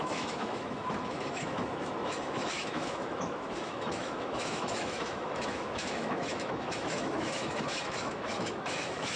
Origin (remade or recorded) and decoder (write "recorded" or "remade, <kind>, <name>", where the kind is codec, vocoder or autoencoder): remade, autoencoder, DAC-VAE